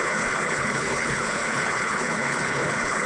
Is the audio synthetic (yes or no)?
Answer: yes